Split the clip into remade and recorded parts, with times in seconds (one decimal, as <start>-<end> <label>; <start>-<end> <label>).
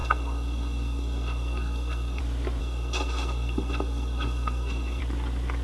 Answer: 0.0-2.2 remade; 2.2-2.6 recorded; 2.6-5.0 remade; 5.0-5.6 recorded